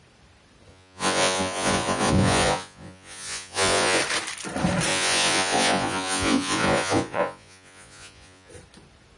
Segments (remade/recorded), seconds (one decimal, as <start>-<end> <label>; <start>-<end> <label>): 0.0-0.7 recorded; 0.7-4.0 remade; 4.0-4.9 recorded; 4.9-8.5 remade; 8.5-9.2 recorded